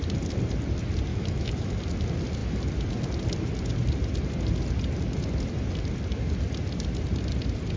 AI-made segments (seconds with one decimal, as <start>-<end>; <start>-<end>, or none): 1.1-1.8

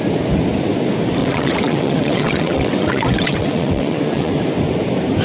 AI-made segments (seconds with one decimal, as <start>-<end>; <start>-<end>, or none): 1.2-4.3

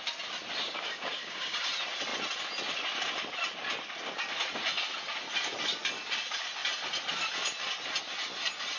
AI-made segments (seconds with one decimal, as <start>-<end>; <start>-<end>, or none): 0.6-1.6